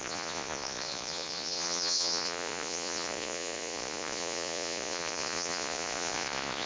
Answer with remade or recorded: remade